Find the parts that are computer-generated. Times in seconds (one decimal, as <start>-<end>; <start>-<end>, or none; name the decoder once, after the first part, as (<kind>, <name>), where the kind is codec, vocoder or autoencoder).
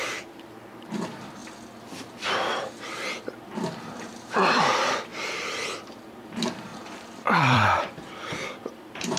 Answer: 0.0-1.4 (vocoder, BigVGAN v2); 2.1-5.1; 6.1-9.2